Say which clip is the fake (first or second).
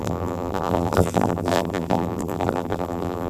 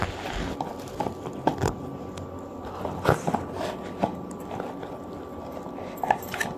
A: first